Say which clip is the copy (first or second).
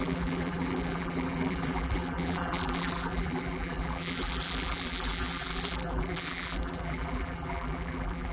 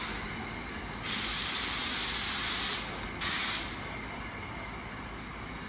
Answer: first